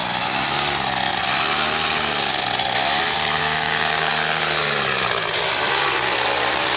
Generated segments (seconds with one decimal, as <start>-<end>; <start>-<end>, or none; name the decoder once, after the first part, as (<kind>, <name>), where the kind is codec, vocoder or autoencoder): 3.4-4.1 (codec, DAC)

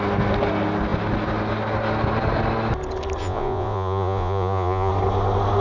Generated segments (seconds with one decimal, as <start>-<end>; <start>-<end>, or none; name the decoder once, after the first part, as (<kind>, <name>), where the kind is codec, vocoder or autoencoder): 3.2-4.9 (vocoder, Vocos)

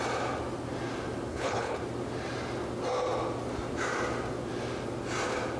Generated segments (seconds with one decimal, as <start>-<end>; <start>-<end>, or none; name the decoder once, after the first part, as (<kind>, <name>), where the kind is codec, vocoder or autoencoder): 1.3-1.8 (codec, HILCodec)

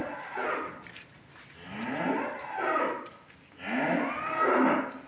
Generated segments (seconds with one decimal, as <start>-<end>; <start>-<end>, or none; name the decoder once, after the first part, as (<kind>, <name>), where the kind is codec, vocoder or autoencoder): 0.0-3.1 (vocoder, BigVGAN v2)